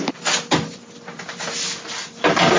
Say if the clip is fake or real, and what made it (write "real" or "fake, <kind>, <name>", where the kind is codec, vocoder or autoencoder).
real